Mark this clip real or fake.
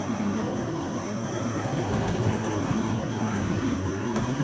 fake